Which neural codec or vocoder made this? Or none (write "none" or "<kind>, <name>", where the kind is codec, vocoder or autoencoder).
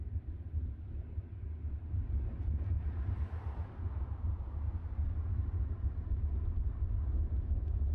none